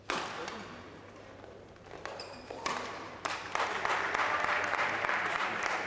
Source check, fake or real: fake